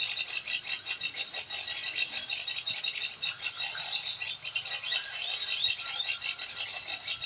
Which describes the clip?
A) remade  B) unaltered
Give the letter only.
B